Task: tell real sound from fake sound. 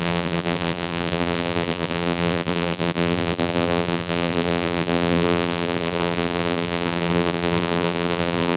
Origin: fake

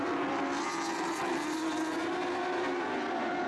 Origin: real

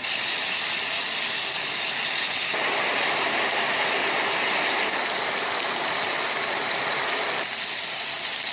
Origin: real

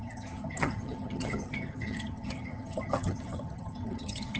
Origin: fake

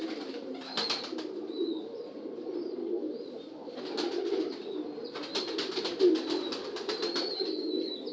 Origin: real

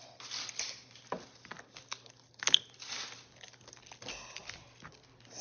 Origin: real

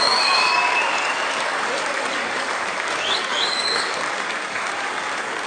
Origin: fake